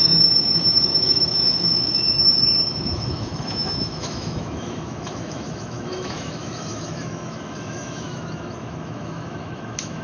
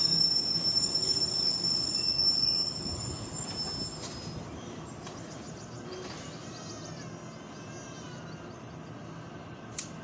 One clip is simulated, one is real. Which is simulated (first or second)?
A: first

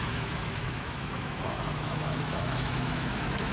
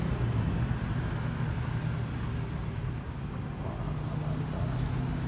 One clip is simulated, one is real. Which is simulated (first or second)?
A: first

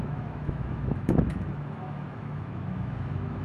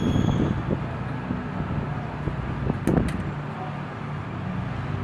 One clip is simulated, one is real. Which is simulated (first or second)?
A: first